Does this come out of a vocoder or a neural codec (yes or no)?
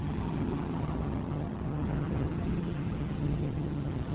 yes